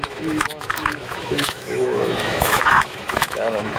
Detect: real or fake fake